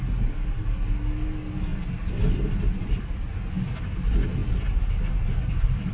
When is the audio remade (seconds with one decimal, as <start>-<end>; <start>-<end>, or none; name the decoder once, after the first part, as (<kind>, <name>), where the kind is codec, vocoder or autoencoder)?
none